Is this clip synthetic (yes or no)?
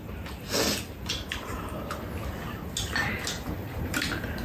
no